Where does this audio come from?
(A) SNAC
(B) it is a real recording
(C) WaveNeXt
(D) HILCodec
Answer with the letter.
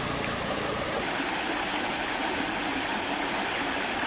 B